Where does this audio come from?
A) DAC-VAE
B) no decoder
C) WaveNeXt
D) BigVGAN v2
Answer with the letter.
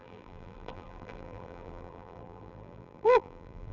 D